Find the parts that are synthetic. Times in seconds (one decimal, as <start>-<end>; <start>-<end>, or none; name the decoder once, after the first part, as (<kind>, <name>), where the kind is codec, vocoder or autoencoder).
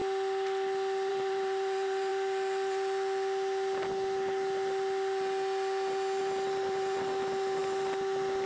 1.1-2.1 (vocoder, BigVGAN v2); 6.2-7.6